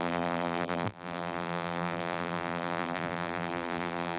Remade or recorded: remade